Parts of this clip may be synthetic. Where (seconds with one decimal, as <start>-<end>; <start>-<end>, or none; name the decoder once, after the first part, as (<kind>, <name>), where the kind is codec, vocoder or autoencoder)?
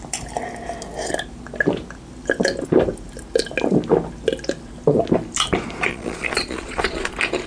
5.9-7.1 (vocoder, Vocos)